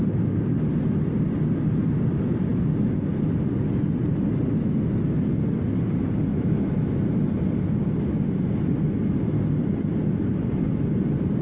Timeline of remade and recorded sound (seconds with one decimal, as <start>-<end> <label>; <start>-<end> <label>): 0.0-6.3 recorded; 6.3-6.9 remade; 6.9-11.4 recorded